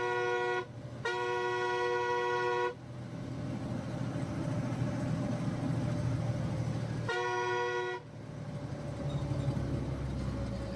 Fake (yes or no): no